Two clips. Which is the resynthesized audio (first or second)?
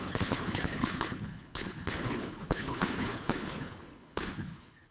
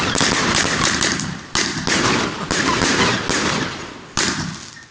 first